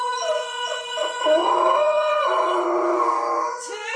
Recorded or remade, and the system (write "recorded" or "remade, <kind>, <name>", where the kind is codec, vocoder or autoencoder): remade, vocoder, Vocos